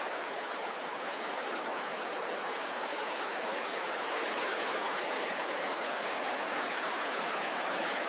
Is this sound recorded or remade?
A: remade